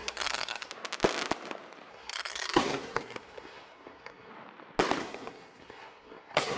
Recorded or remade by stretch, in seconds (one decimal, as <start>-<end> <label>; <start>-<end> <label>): 0.0-0.7 remade; 0.7-1.9 recorded; 1.9-4.3 remade; 4.3-5.0 recorded; 5.0-6.6 remade